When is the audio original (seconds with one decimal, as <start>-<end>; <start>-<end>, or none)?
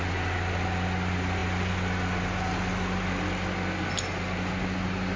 0.0-5.2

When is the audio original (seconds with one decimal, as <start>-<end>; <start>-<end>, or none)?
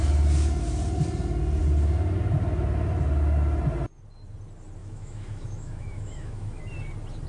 0.0-4.8; 6.6-7.3